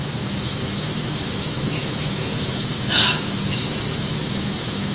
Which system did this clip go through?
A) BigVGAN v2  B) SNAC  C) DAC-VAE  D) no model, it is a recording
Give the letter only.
C